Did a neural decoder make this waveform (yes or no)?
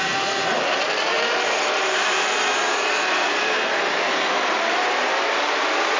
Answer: yes